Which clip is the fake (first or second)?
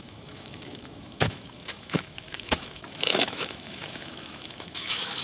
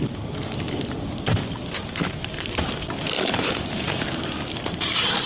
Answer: first